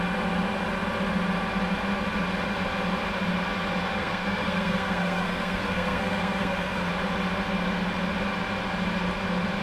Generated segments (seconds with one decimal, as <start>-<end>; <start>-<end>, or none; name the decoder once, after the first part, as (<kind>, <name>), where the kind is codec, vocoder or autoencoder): 4.0-6.9 (codec, SNAC)